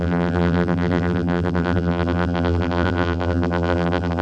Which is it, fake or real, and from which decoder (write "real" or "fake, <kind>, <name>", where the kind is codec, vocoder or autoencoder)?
fake, vocoder, BigVGAN v2